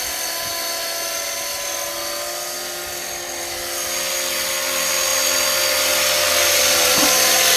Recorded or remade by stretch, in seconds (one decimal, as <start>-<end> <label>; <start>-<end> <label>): 0.0-7.6 recorded